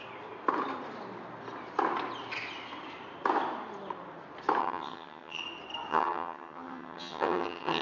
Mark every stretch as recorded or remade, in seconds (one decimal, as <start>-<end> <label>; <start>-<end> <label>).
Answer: 0.0-4.6 recorded; 4.6-5.4 remade; 5.4-5.9 recorded; 5.9-7.8 remade